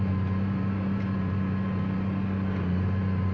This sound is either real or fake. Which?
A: real